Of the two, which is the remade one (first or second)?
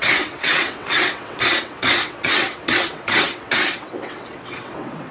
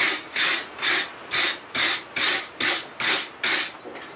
first